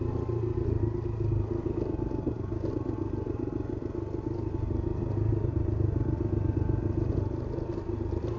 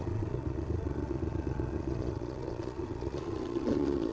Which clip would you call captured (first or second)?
first